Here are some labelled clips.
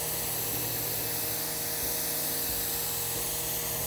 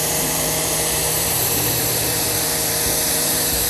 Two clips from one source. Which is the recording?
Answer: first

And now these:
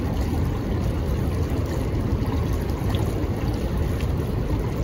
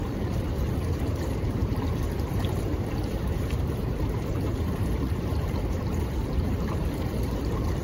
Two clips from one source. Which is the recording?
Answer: first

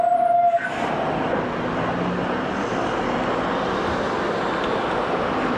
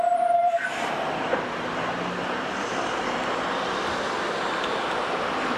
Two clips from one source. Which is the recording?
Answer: first